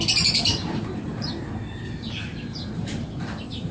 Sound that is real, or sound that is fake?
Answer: real